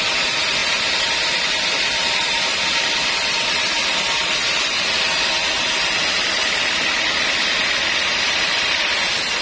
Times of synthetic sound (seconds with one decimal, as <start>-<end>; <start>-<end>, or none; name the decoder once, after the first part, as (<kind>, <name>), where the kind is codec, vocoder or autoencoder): none